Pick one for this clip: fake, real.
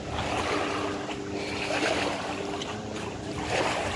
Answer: real